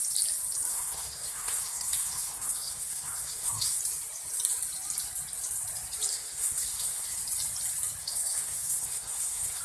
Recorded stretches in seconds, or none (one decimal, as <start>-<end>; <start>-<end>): 0.0-0.7; 3.8-6.1; 7.2-8.0